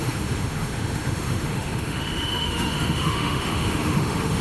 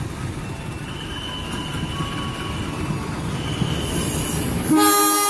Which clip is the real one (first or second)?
second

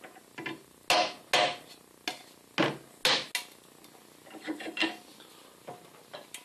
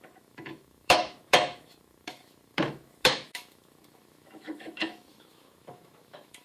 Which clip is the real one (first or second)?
first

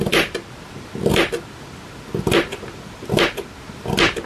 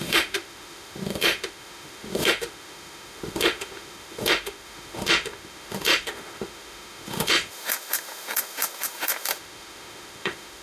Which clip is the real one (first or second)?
first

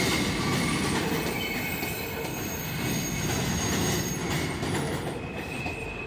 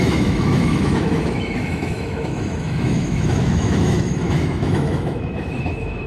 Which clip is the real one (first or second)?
first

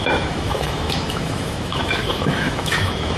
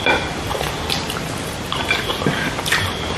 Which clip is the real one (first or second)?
second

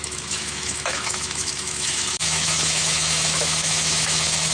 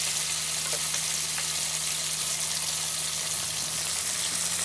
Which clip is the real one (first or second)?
second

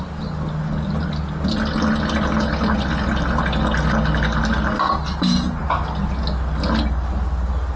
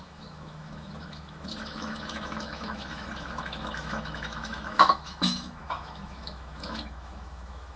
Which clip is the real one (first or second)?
first